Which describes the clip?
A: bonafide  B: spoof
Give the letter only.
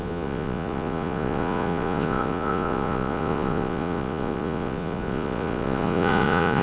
B